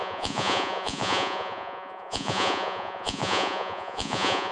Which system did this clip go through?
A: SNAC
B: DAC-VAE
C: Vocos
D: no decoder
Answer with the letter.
C